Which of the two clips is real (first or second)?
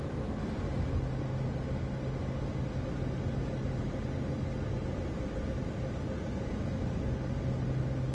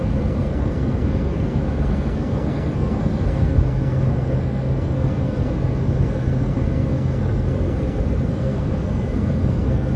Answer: first